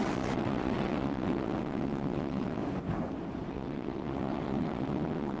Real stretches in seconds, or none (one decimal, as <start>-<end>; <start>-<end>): 2.6-3.5